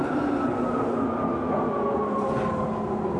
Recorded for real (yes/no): yes